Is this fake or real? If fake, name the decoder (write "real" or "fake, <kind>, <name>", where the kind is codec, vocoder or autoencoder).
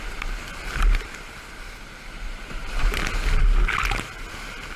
real